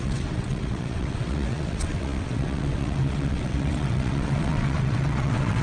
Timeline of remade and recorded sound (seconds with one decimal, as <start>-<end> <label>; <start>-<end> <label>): 0.0-5.6 remade